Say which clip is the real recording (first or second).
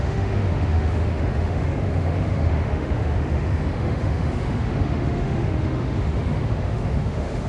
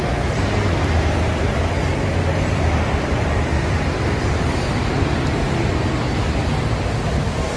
second